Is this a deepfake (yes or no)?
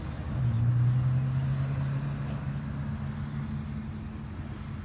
no